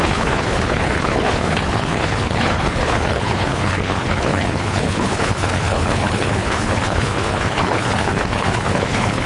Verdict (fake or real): fake